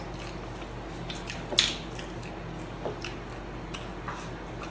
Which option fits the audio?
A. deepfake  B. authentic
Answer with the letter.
B